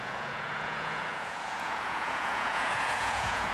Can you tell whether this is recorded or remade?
remade